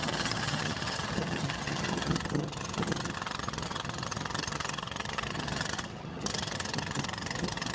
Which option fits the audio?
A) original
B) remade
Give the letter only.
B